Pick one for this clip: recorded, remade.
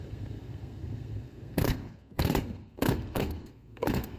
remade